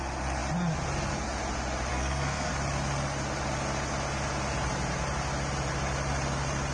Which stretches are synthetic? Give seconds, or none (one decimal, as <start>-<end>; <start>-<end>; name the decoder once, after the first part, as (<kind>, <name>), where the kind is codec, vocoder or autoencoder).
1.9-2.5 (codec, SNAC)